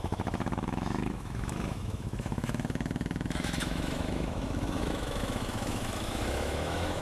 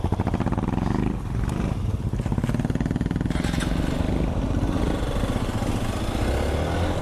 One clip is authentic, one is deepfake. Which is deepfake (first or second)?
first